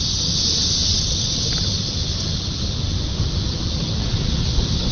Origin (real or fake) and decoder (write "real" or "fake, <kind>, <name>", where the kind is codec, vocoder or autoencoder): real